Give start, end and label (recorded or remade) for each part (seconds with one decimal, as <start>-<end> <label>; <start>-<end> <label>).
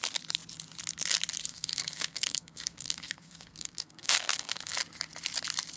0.0-1.5 recorded; 1.5-4.8 remade; 4.8-5.8 recorded